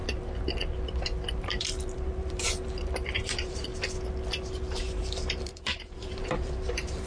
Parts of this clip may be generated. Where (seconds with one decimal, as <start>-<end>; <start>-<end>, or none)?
1.3-3.7; 4.8-7.1

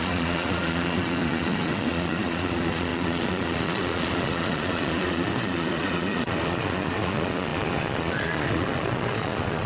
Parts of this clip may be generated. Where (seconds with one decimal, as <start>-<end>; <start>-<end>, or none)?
0.0-9.7

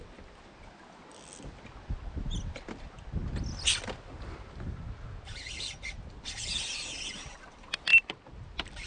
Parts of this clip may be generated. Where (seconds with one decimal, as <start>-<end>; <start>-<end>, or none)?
none

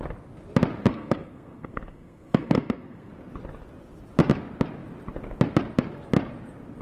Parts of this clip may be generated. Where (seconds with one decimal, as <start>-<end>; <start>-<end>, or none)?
0.9-3.1

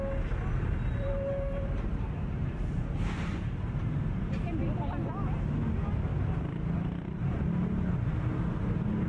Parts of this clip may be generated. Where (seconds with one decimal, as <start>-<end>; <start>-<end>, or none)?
0.9-4.3; 6.1-7.5

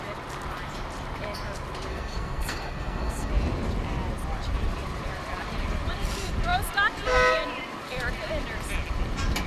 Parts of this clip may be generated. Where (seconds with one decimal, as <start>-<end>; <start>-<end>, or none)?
1.9-3.3

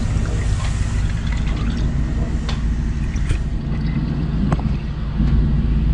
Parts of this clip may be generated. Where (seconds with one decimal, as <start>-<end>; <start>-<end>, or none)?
none